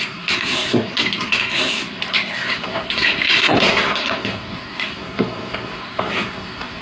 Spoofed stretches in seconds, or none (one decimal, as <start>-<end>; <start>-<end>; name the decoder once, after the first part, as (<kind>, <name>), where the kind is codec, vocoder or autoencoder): 0.0-6.8 (codec, SNAC)